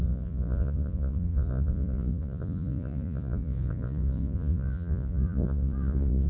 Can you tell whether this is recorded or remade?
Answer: remade